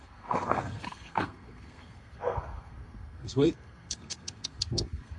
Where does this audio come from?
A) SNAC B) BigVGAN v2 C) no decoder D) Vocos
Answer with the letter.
A